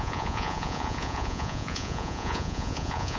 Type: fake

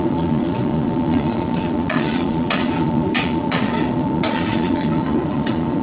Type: fake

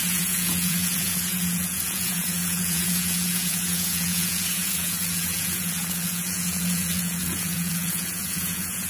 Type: fake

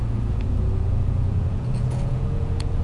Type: fake